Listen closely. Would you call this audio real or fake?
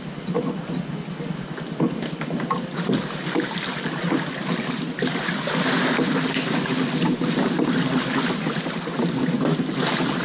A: real